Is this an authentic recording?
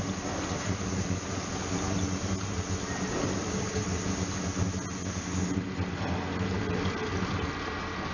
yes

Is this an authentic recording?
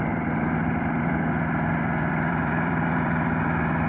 no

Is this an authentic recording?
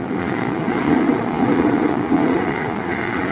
no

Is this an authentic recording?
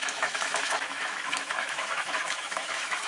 no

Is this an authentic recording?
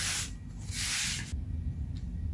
yes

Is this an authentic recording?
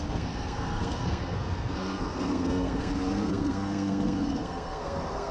no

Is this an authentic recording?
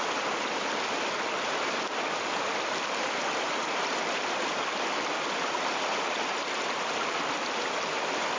yes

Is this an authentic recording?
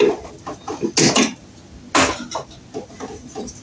yes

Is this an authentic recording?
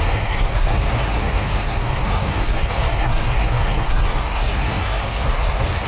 no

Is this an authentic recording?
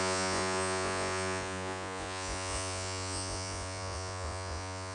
no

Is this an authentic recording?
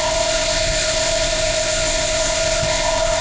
no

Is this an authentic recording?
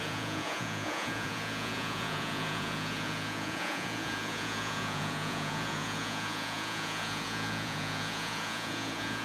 no